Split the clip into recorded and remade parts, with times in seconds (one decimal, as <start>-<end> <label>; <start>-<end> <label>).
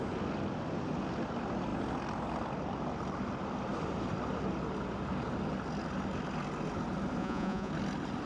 0.0-7.2 recorded; 7.2-7.7 remade; 7.7-8.3 recorded